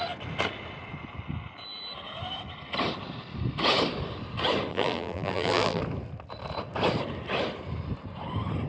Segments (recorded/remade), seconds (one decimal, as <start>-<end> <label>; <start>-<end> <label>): 0.0-4.7 recorded; 4.7-5.8 remade; 5.8-8.7 recorded